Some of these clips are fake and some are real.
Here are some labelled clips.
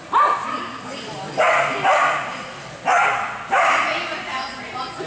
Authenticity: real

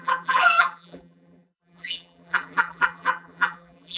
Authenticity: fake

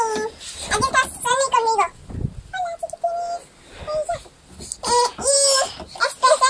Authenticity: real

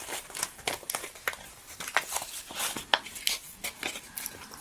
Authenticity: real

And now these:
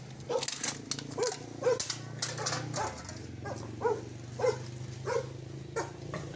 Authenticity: real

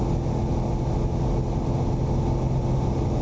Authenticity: real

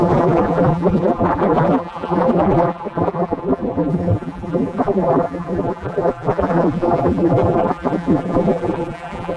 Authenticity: fake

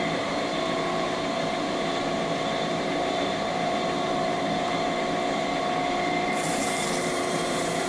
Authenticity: fake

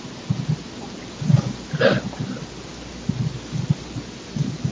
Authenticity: real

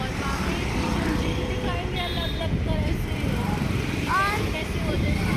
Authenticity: fake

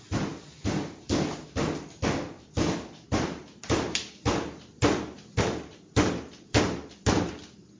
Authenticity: real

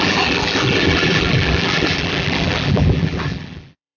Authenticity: fake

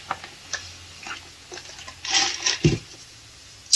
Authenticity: real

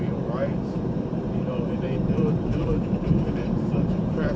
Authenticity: fake